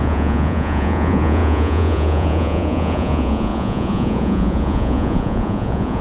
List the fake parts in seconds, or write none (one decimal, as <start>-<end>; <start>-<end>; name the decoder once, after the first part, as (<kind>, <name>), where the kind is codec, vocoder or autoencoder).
0.0-6.0 (vocoder, Vocos)